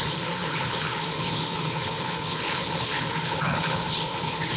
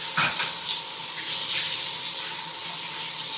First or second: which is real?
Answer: second